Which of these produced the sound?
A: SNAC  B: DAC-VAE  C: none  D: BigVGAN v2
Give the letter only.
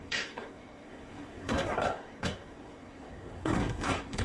A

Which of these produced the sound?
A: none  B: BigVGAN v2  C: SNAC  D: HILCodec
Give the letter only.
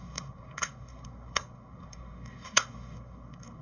C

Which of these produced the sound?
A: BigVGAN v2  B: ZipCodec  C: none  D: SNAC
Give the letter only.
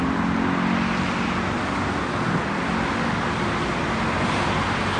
C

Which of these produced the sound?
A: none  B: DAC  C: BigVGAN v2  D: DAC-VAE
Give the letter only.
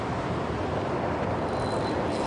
A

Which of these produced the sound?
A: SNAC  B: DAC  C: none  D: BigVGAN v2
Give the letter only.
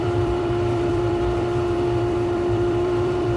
D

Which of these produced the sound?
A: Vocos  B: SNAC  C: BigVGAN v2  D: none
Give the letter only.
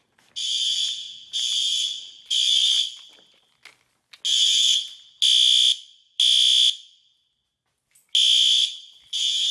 D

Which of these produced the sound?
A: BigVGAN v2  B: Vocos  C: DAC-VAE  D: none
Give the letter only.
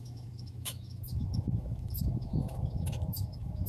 C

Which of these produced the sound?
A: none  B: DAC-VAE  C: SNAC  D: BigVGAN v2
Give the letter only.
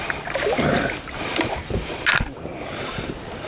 A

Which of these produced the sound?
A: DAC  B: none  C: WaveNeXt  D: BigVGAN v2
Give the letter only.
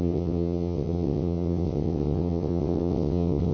C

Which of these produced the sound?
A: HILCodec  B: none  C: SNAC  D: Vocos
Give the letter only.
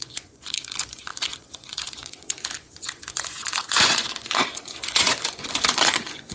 D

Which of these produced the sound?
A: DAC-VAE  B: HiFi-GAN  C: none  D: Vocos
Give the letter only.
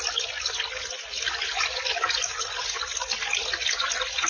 C